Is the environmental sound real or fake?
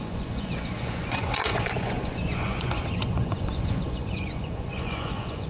fake